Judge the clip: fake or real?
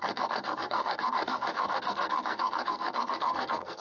fake